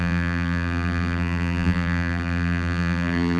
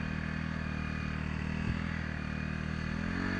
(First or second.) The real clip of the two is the second